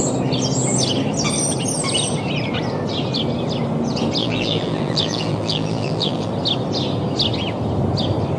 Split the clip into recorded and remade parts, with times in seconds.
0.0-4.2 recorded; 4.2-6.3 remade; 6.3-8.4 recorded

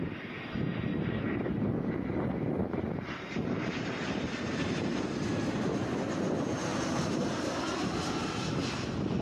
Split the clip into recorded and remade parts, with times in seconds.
0.0-0.9 recorded; 0.9-5.8 remade; 5.8-6.7 recorded; 6.7-7.6 remade; 7.6-9.2 recorded

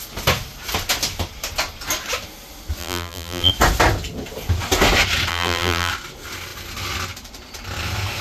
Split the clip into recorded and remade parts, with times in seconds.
0.0-2.8 recorded; 2.8-3.5 remade; 3.5-5.3 recorded; 5.3-5.9 remade; 5.9-8.2 recorded

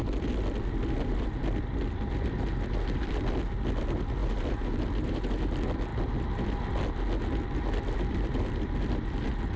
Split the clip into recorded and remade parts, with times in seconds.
0.0-4.2 recorded; 4.2-5.4 remade; 5.4-9.6 recorded

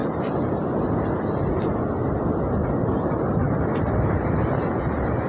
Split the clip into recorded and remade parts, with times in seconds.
0.0-2.6 recorded; 2.6-3.7 remade; 3.7-5.3 recorded

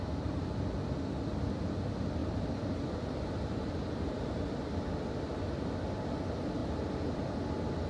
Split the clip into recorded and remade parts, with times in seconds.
0.0-2.2 recorded; 2.2-4.1 remade; 4.1-6.6 recorded; 6.6-7.2 remade; 7.2-7.9 recorded